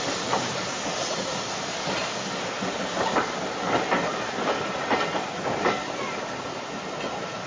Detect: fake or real real